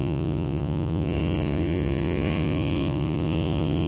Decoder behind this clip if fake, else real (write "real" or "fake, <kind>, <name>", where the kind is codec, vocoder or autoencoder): fake, vocoder, Vocos